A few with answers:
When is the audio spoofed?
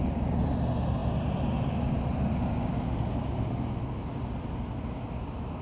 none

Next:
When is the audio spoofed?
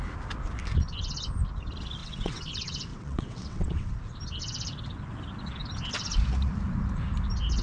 2.0-2.5 (vocoder, WaveNeXt); 2.9-3.9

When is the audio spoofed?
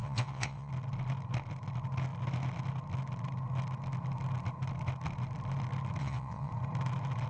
0.0-0.7 (vocoder, WaveNeXt); 6.0-6.5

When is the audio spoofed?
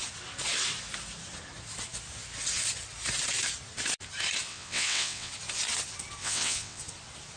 4.5-5.3 (vocoder, WaveNeXt); 6.2-6.8